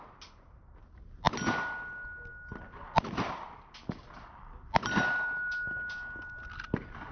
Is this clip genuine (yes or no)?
yes